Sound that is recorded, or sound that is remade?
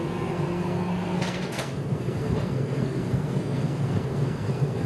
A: remade